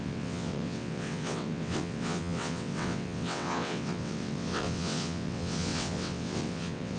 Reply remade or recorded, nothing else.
remade